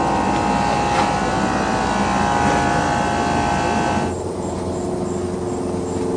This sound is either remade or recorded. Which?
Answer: recorded